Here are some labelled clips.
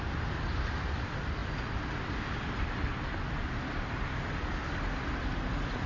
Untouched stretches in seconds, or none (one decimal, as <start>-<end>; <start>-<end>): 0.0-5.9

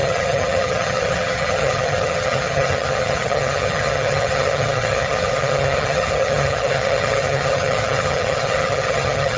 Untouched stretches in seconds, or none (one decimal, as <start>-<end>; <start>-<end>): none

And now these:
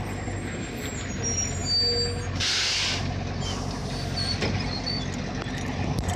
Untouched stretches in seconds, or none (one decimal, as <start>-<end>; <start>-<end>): 0.0-6.2